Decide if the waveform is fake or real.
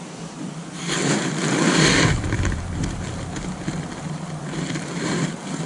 fake